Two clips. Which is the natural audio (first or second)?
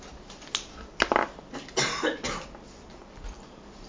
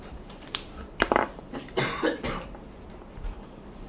first